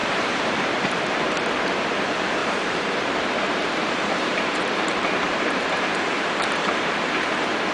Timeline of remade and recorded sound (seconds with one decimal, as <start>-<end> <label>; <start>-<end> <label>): 0.0-1.0 remade; 1.0-2.4 recorded; 2.4-7.0 remade; 7.0-7.7 recorded